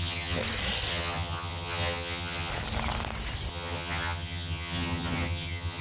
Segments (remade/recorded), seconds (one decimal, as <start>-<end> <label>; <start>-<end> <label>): 0.0-0.4 remade; 0.4-0.9 recorded; 0.9-2.5 remade; 2.5-3.5 recorded; 3.5-5.8 remade